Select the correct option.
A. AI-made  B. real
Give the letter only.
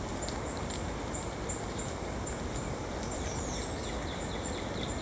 B